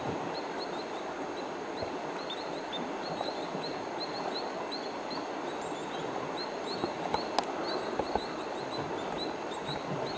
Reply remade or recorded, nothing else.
recorded